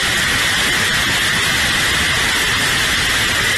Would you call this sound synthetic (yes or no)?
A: no